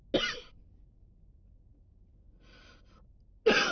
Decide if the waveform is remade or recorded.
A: recorded